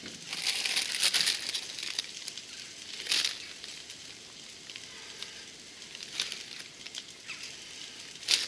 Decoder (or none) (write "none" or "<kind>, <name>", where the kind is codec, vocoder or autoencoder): none